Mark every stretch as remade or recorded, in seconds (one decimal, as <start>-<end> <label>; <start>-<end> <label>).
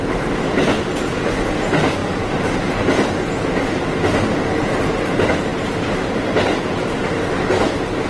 0.0-2.0 recorded; 2.0-2.7 remade; 2.7-8.1 recorded